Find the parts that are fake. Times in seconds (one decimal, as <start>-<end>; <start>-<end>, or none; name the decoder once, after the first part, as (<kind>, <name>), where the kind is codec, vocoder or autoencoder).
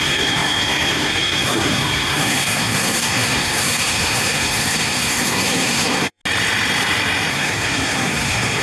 0.0-6.2 (codec, SNAC); 7.3-8.6